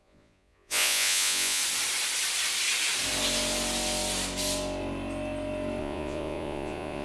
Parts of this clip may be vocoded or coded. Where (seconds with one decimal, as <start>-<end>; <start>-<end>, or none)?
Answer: 0.0-1.6; 5.8-7.0